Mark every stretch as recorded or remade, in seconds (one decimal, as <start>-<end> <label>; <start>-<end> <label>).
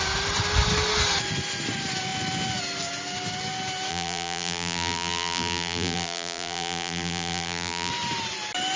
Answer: 0.0-3.9 recorded; 3.9-7.9 remade; 7.9-8.8 recorded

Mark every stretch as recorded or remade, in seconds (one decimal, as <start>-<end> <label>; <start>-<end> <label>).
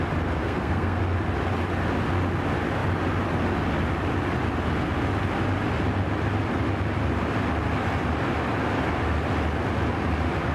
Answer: 0.0-0.4 recorded; 0.4-1.0 remade; 1.0-10.5 recorded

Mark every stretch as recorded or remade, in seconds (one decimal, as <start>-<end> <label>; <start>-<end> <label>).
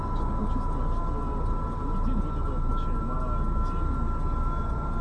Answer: 0.0-5.0 recorded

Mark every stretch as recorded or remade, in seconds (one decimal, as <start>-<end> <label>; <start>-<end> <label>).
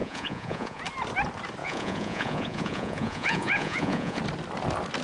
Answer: 0.0-0.8 remade; 0.8-1.6 recorded; 1.6-4.2 remade; 4.2-5.0 recorded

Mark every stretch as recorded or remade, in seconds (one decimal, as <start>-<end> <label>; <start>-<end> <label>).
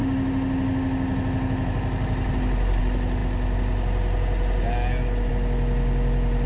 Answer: 0.0-6.5 recorded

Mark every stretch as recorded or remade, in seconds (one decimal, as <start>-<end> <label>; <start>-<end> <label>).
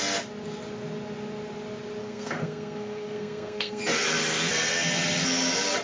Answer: 0.0-2.0 recorded; 2.0-3.8 remade; 3.8-5.8 recorded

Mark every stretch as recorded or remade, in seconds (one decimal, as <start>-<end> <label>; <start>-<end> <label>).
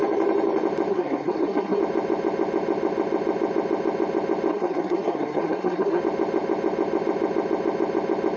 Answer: 0.0-0.9 recorded; 0.9-1.8 remade; 1.8-4.5 recorded; 4.5-6.0 remade; 6.0-8.4 recorded